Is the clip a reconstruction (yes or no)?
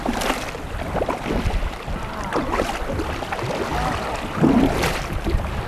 no